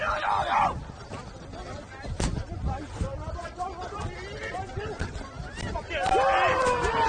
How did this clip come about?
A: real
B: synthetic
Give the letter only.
A